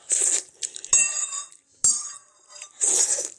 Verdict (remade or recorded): recorded